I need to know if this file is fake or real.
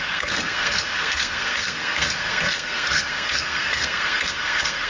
fake